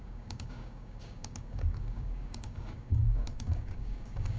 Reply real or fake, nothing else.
fake